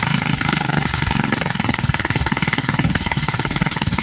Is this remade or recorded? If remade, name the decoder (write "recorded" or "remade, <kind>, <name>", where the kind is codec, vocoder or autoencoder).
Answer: remade, codec, SNAC